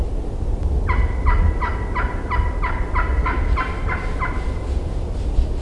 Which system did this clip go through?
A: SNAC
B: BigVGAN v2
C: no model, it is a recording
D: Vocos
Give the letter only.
C